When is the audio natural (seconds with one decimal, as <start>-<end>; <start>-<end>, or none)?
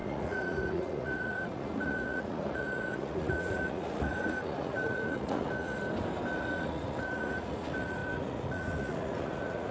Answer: 5.8-6.3